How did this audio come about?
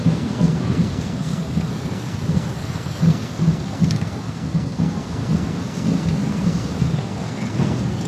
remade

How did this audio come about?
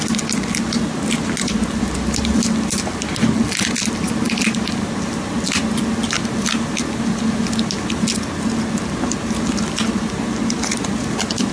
recorded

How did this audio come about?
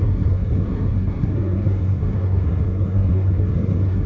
remade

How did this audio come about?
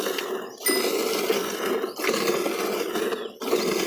recorded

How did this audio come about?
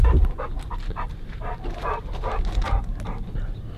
recorded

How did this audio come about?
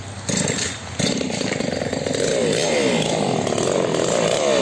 recorded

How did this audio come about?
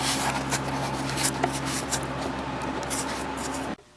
recorded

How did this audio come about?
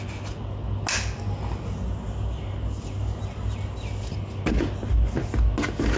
recorded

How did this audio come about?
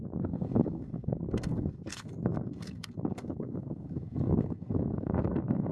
remade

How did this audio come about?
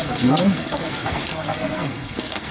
remade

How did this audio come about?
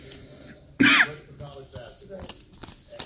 recorded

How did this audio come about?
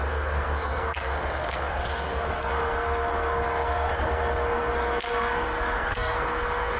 remade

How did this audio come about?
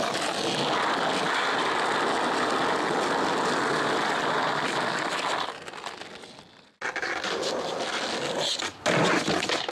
recorded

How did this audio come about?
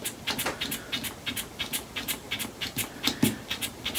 recorded